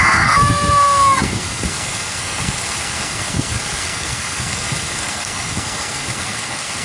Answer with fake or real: fake